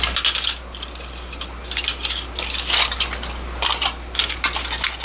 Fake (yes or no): no